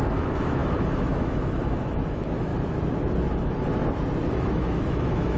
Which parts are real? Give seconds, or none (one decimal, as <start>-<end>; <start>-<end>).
2.5-3.2; 3.8-4.3